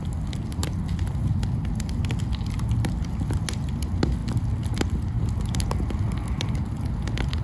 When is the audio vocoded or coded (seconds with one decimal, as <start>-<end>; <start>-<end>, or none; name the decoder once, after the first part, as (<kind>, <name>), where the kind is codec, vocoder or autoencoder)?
none